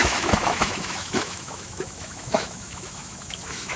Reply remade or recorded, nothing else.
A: remade